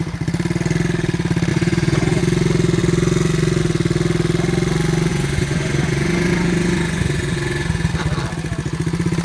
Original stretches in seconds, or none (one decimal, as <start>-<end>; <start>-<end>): 0.0-1.5; 2.2-5.1; 7.9-9.2